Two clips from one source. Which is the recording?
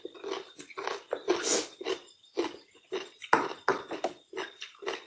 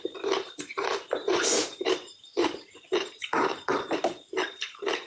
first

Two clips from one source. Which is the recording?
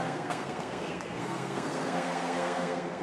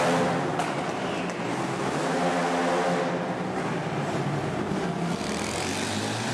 second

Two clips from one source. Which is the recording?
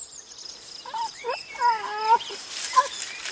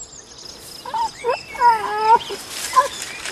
second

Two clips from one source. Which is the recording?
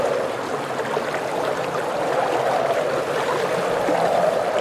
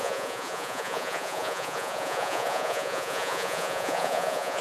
first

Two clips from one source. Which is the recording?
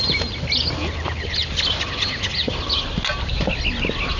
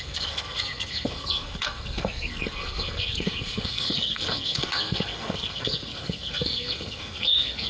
first